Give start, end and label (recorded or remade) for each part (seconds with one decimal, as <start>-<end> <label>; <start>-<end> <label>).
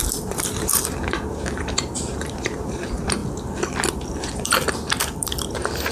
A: 0.0-3.2 remade; 3.2-3.9 recorded; 3.9-5.9 remade